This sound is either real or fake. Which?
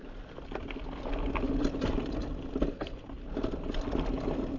real